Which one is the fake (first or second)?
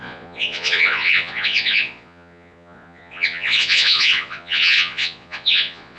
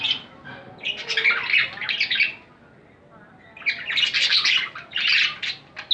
first